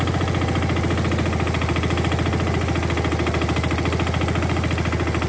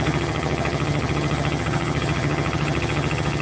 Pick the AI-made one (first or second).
second